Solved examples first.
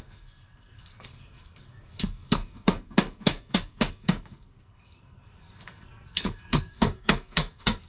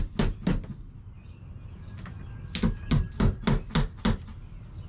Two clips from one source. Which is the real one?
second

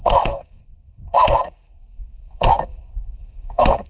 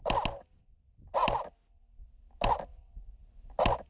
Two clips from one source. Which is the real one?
second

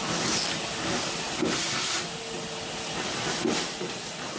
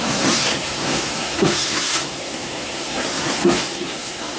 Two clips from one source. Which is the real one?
first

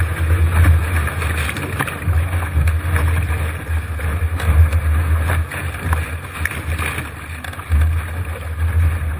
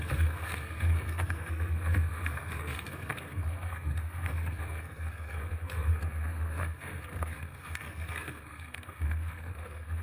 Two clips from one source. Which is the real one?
first